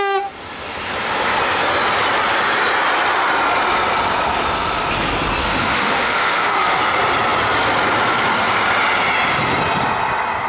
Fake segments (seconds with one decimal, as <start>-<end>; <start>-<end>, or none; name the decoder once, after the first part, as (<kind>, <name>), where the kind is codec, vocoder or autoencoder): 5.4-6.8 (autoencoder, DAC-VAE)